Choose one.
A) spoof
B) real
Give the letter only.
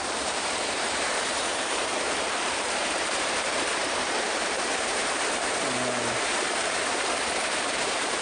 A